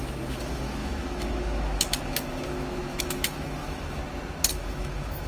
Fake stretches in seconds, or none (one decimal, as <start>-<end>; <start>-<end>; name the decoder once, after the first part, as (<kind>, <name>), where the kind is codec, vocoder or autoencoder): 0.0-4.0 (autoencoder, DAC-VAE); 4.5-5.3